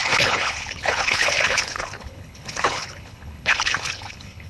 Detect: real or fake fake